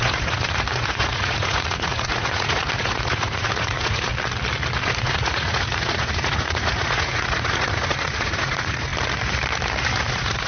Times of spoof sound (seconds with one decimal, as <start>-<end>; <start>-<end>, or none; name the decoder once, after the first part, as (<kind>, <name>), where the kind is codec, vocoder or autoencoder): 0.0-4.1 (vocoder, Vocos); 4.8-8.9; 10.1-10.5